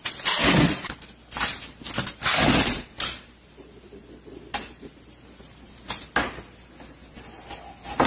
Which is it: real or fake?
real